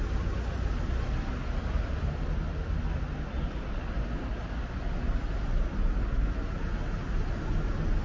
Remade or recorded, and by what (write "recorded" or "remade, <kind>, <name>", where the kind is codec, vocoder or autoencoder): recorded